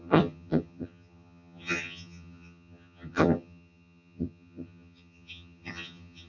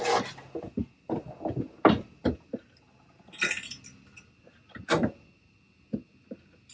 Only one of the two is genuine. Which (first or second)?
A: second